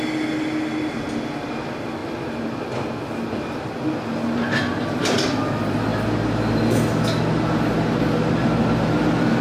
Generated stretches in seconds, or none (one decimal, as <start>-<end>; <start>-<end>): none